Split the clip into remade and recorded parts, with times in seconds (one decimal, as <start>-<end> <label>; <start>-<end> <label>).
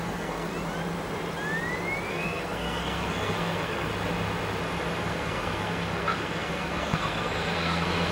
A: 0.0-0.5 remade; 0.5-2.1 recorded; 2.1-3.9 remade; 3.9-5.0 recorded; 5.0-8.1 remade